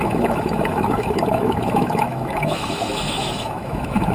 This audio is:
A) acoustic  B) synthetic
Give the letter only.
B